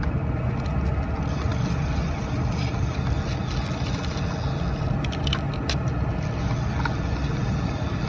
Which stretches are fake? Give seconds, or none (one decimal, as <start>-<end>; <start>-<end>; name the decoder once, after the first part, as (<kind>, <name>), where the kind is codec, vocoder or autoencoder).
none